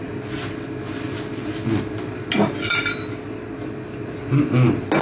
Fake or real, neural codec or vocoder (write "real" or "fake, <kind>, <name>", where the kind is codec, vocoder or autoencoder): real